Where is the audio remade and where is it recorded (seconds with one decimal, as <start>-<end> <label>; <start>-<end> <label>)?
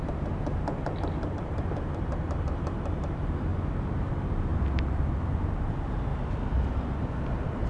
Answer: 0.0-3.5 remade; 3.5-4.1 recorded; 4.1-4.5 remade; 4.5-5.4 recorded; 5.4-6.1 remade; 6.1-6.7 recorded; 6.7-7.7 remade